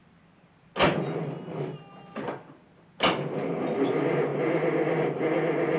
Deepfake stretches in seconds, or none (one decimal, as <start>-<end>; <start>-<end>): none